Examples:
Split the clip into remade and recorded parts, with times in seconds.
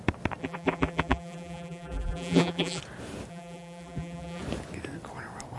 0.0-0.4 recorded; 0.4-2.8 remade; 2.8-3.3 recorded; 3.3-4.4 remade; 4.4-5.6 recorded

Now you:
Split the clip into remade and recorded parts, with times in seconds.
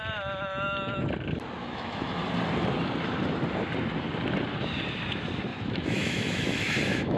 0.0-1.6 recorded; 1.6-2.2 remade; 2.2-5.5 recorded; 5.5-7.2 remade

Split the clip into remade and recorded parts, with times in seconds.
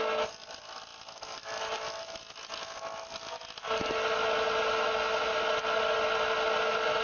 0.0-7.0 recorded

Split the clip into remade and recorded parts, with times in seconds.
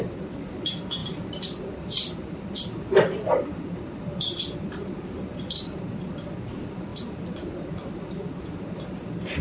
0.0-9.4 remade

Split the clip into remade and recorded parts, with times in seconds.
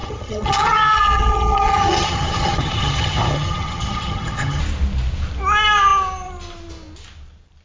0.0-4.6 remade; 4.6-7.6 recorded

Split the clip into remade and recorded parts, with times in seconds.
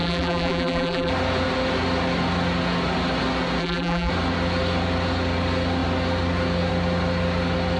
0.0-1.1 remade; 1.1-3.6 recorded; 3.6-4.1 remade; 4.1-7.8 recorded